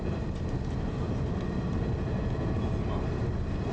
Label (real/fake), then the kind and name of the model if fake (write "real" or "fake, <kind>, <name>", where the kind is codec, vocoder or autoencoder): real